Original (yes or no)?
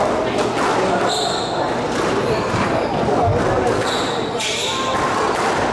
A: yes